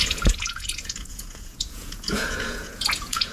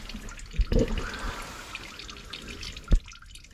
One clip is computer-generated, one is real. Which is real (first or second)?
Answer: second